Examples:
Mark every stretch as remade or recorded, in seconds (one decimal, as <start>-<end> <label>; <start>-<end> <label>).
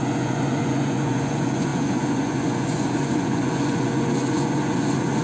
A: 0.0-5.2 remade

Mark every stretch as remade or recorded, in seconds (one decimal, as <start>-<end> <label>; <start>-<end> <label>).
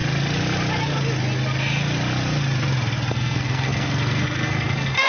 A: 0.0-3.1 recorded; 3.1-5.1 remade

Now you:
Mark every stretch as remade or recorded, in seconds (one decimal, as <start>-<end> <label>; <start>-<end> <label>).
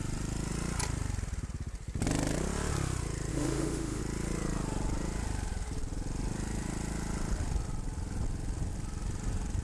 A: 0.0-3.3 recorded; 3.3-4.0 remade; 4.0-9.6 recorded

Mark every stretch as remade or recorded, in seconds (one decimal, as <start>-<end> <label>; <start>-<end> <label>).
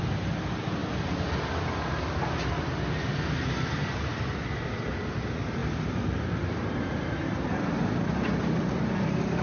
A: 0.0-9.4 recorded